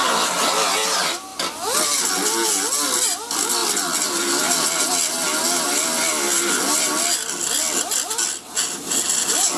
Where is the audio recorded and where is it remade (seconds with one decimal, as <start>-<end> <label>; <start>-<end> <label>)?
0.0-9.6 recorded